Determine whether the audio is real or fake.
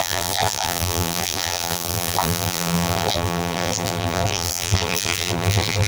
fake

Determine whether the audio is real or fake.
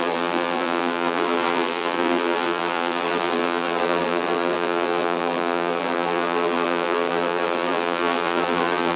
fake